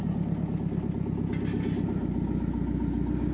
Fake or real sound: real